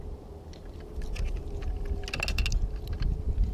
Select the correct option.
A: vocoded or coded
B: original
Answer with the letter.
B